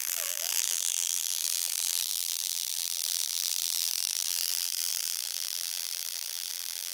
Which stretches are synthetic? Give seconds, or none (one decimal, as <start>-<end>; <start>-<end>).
0.0-6.9